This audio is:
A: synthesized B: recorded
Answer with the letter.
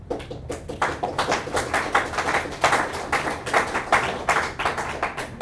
B